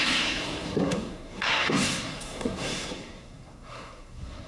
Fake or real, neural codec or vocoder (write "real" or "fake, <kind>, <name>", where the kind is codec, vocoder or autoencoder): fake, codec, SNAC